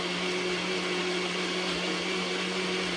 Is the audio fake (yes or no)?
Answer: no